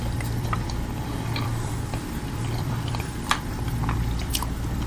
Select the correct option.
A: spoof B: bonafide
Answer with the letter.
A